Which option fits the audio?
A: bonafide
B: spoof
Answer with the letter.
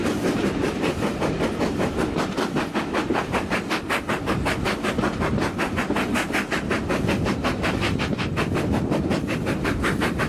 A